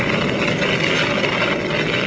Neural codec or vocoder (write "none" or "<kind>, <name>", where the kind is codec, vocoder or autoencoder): none